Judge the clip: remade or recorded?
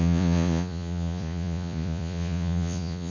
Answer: remade